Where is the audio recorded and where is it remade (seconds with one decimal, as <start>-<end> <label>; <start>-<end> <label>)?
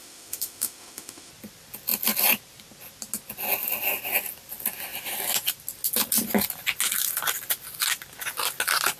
0.0-1.3 remade; 1.3-9.0 recorded